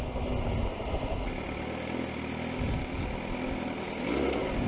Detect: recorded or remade recorded